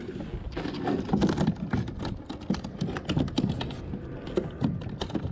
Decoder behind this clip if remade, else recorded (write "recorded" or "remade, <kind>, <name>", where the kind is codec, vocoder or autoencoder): recorded